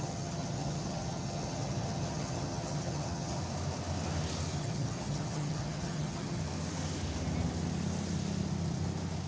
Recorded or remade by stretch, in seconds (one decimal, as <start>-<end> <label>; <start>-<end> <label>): 0.0-3.4 remade; 3.4-4.6 recorded; 4.6-6.4 remade; 6.4-9.3 recorded